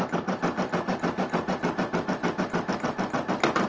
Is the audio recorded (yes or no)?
yes